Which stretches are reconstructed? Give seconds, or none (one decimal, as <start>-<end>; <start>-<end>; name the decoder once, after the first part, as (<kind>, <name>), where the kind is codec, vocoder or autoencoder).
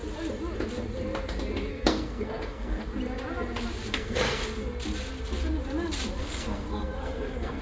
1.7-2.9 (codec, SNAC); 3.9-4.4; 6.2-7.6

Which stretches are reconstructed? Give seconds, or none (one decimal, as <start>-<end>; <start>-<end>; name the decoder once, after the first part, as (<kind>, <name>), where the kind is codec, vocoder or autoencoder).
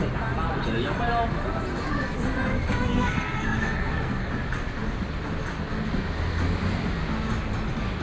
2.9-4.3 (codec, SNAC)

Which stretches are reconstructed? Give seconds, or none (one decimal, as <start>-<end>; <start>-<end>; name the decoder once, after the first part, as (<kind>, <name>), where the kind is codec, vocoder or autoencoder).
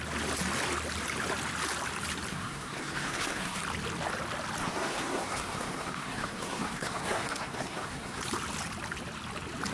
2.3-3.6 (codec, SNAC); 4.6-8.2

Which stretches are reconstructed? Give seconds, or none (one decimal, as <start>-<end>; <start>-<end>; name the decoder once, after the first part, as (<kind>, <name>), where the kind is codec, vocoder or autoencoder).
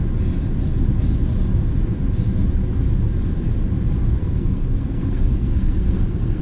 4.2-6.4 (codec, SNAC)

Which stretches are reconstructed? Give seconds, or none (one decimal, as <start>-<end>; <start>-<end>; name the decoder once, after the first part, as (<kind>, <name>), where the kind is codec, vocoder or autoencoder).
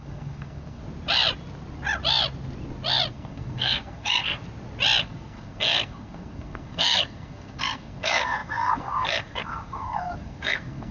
0.0-0.8 (codec, SNAC); 3.1-4.4; 5.0-10.9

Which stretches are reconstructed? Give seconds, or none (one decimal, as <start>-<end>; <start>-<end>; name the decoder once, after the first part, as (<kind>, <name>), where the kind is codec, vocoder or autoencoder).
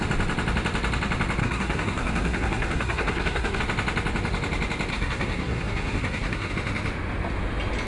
1.4-3.6 (codec, SNAC); 4.9-6.5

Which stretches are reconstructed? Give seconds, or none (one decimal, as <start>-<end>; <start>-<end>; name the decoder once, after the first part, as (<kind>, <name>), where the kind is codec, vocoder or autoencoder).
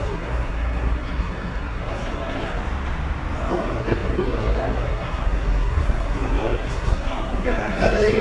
0.0-2.6 (codec, SNAC); 3.5-8.2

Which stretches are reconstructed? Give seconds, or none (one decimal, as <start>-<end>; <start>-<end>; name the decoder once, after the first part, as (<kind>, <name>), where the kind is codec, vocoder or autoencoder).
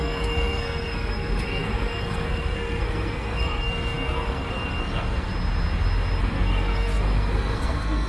0.0-5.3 (codec, SNAC); 6.2-8.1